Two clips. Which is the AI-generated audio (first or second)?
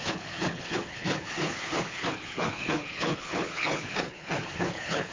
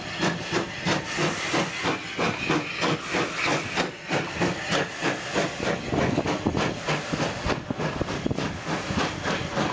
first